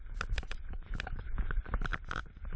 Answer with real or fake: fake